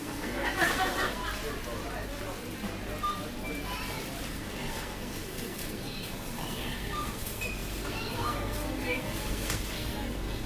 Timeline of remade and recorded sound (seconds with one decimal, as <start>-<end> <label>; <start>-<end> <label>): 0.0-1.2 remade; 1.2-4.3 recorded; 4.3-10.5 remade